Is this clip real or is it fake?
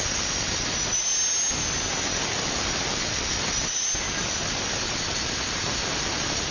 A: real